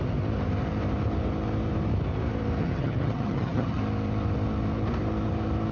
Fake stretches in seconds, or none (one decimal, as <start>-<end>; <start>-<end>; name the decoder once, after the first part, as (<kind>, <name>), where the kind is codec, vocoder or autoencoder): 2.6-3.8 (vocoder, HiFi-GAN)